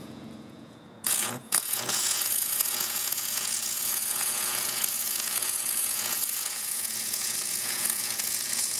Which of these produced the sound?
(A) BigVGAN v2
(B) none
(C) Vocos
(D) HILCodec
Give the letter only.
C